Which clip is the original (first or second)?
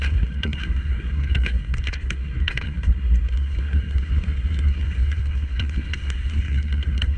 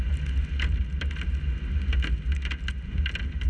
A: second